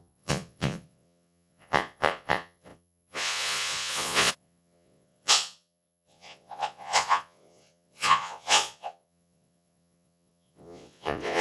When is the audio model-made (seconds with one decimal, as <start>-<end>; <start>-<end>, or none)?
0.0-11.4